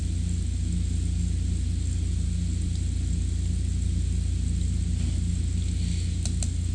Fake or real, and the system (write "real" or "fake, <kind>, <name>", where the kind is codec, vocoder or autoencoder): real